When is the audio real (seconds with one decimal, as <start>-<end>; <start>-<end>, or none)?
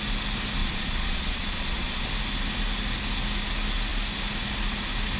0.0-0.6; 2.0-5.2